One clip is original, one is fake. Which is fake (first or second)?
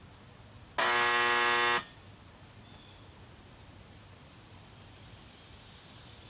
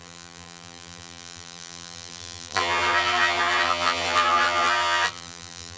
second